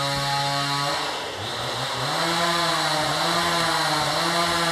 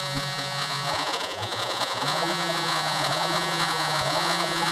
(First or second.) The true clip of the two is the first